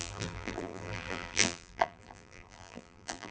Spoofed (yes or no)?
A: yes